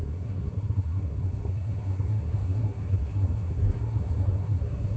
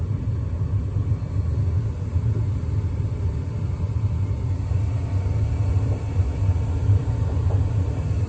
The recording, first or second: second